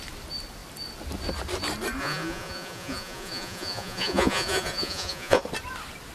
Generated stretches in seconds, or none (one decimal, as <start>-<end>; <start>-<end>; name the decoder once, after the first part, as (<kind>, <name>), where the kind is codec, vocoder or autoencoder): 2.0-5.4 (vocoder, Vocos)